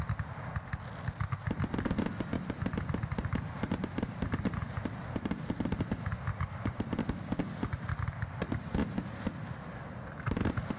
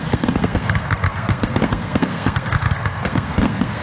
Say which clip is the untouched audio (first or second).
first